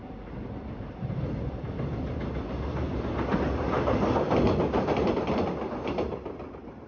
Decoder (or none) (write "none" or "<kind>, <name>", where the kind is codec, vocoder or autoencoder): none